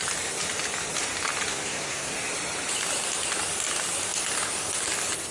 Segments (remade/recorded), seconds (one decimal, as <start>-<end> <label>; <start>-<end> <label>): 0.0-1.5 recorded; 1.5-2.1 remade; 2.1-5.3 recorded